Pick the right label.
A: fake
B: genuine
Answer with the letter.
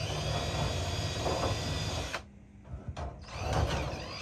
B